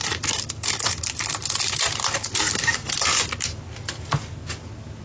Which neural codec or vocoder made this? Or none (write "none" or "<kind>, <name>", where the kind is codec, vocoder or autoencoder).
none